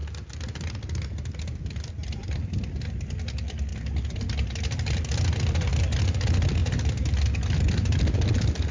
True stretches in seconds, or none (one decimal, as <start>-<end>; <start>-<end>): 0.0-8.7